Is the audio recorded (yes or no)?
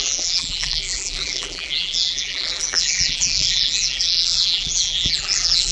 no